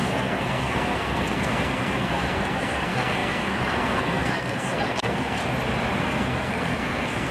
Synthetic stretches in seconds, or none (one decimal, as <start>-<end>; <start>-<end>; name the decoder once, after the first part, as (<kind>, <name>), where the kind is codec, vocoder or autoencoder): 0.0-5.4 (codec, SNAC); 6.0-7.3